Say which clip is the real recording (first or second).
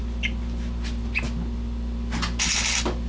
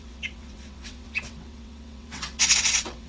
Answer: first